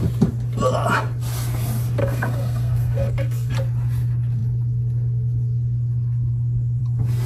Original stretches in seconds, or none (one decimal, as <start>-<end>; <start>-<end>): 0.0-2.0; 3.5-7.3